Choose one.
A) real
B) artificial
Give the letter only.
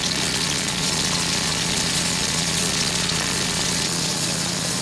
B